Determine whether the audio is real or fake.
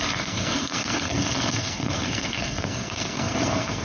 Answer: fake